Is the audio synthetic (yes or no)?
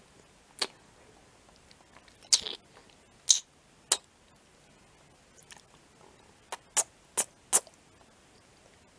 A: no